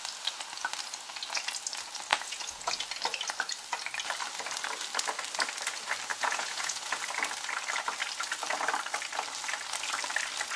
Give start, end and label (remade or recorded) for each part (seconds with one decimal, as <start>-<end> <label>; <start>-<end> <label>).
0.0-2.1 recorded; 2.1-2.7 remade; 2.7-6.1 recorded; 6.1-7.0 remade; 7.0-10.6 recorded

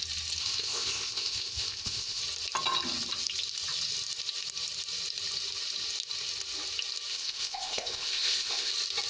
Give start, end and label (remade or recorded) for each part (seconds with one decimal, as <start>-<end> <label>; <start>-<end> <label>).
0.0-0.4 recorded; 0.4-2.2 remade; 2.2-7.1 recorded; 7.1-8.7 remade; 8.7-9.1 recorded

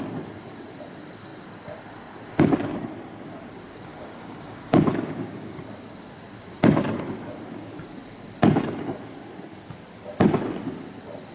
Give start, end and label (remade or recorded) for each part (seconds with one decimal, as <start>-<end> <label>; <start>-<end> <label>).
0.0-3.9 recorded; 3.9-5.6 remade; 5.6-11.3 recorded

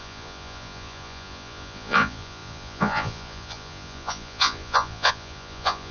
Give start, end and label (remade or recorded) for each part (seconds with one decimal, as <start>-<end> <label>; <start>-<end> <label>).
0.0-5.9 remade